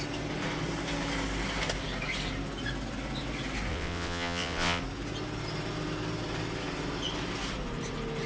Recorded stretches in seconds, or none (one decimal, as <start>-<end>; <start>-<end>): 0.0-3.7; 4.8-8.3

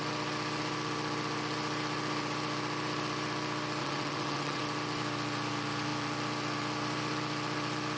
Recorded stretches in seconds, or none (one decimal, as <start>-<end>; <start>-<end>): 0.0-3.8; 4.6-8.0

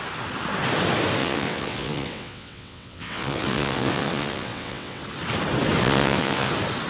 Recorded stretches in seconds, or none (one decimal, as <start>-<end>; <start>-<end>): 0.0-1.2; 5.0-5.8; 6.5-6.9

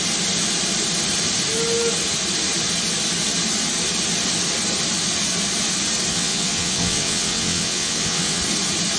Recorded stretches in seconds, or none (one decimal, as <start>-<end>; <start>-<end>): 0.0-6.1; 8.4-9.0